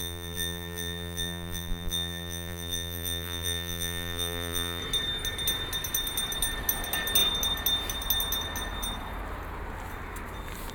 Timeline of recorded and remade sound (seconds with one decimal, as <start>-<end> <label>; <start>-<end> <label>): 0.0-4.8 remade; 4.8-10.7 recorded